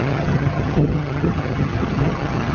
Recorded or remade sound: remade